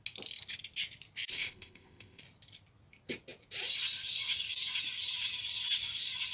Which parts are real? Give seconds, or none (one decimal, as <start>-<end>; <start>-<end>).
0.0-1.3; 2.2-6.3